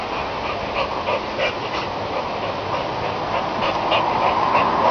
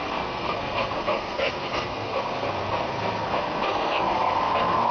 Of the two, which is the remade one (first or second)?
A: second